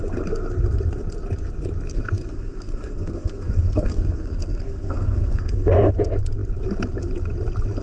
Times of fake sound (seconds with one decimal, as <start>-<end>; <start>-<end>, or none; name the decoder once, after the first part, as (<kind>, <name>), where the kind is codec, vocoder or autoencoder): 1.9-5.9 (codec, SNAC)